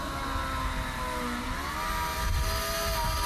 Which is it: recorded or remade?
recorded